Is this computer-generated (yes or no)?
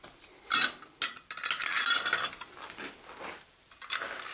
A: no